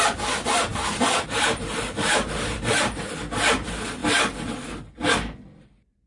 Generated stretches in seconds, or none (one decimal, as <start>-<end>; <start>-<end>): 0.7-3.0; 4.0-4.7